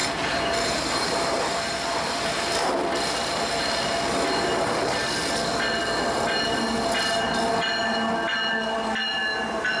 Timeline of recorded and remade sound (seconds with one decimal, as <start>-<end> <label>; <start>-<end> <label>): 0.0-3.6 remade; 3.6-9.8 recorded